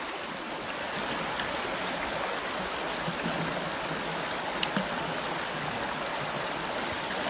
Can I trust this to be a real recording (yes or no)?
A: yes